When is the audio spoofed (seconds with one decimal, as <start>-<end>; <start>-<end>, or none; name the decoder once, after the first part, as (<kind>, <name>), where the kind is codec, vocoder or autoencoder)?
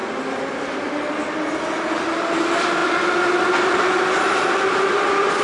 none